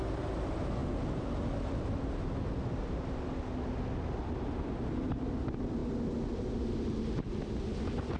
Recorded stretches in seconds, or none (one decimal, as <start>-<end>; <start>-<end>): 0.0-8.2